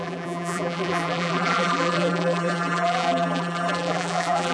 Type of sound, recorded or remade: remade